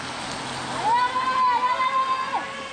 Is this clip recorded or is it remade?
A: recorded